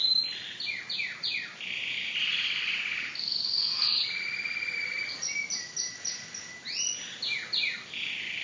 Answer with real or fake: real